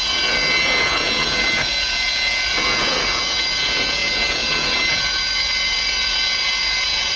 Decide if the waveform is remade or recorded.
remade